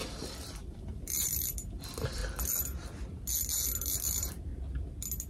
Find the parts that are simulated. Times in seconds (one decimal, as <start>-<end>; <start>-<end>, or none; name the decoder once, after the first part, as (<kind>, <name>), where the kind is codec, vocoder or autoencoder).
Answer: 0.0-2.2 (vocoder, BigVGAN v2); 3.8-4.5